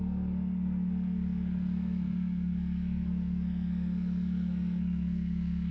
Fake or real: fake